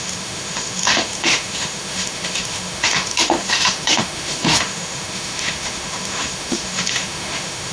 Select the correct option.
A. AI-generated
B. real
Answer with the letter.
A